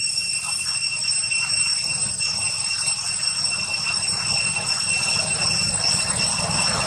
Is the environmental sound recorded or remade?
recorded